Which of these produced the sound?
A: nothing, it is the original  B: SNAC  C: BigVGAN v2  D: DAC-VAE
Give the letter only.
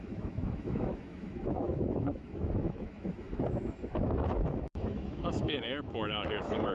D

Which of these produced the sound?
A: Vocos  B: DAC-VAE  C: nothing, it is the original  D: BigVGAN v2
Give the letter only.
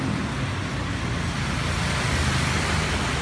C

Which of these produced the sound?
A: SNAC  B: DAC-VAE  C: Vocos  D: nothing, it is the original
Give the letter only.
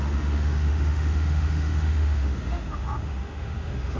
B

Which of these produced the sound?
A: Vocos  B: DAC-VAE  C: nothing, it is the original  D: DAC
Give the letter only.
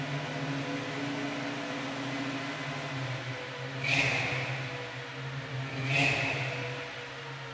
C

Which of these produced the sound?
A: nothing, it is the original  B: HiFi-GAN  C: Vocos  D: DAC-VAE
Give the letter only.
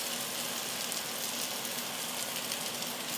A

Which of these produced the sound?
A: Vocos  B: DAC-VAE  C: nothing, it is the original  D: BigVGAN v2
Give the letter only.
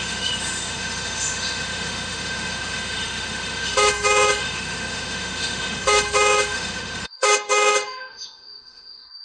B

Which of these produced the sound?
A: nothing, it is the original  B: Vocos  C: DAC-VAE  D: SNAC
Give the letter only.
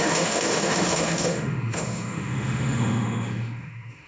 C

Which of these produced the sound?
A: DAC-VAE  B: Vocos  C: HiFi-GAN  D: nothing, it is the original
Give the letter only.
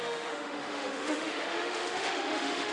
A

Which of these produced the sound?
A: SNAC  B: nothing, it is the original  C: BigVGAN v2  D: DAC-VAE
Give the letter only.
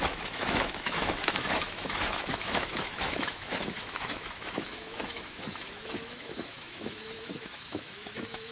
D